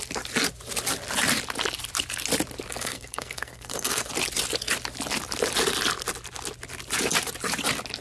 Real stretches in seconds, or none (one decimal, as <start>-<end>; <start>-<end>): 0.0-2.7; 4.1-8.0